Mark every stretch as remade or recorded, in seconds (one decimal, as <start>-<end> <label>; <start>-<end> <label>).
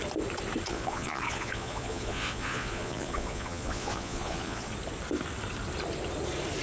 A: 0.0-0.7 recorded; 0.7-4.7 remade; 4.7-6.6 recorded